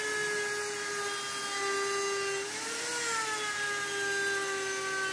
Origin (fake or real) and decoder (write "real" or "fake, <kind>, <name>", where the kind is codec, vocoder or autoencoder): real